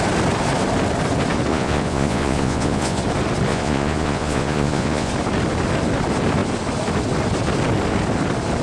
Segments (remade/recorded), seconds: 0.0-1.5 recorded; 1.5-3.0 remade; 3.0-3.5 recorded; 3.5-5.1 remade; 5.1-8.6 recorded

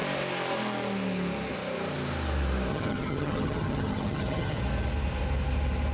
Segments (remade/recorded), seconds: 0.0-2.7 recorded; 2.7-4.6 remade; 4.6-5.9 recorded

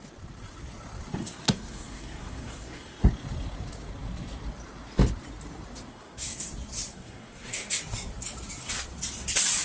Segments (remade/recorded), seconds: 0.0-1.2 recorded; 1.2-3.1 remade; 3.1-5.9 recorded; 5.9-6.5 remade; 6.5-6.9 recorded; 6.9-7.8 remade; 7.8-9.6 recorded

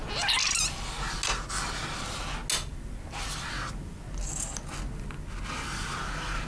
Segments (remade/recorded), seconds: 0.0-6.5 recorded